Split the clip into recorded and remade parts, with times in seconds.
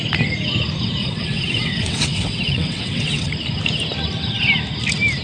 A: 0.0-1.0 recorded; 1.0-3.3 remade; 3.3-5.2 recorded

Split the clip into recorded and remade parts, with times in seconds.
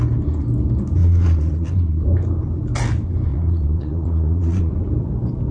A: 0.0-1.0 recorded; 1.0-2.0 remade; 2.0-3.3 recorded; 3.3-4.7 remade; 4.7-5.5 recorded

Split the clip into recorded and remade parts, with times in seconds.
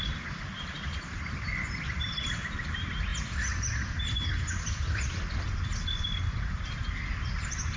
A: 0.0-5.7 remade; 5.7-7.1 recorded; 7.1-7.8 remade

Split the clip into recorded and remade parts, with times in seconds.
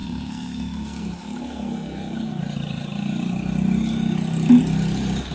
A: 0.0-2.4 remade; 2.4-5.3 recorded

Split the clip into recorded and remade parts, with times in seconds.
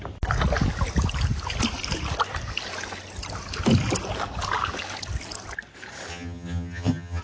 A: 0.0-6.1 recorded; 6.1-7.2 remade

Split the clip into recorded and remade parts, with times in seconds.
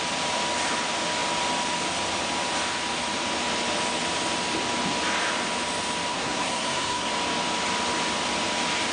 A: 0.0-6.1 recorded; 6.1-7.1 remade; 7.1-8.9 recorded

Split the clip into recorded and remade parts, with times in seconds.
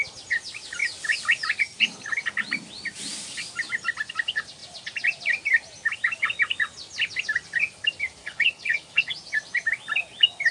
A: 0.0-8.2 recorded; 8.2-9.1 remade; 9.1-10.5 recorded